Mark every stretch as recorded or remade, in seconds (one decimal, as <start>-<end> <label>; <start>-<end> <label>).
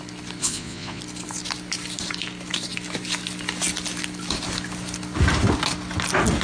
0.0-0.4 recorded; 0.4-1.0 remade; 1.0-6.4 recorded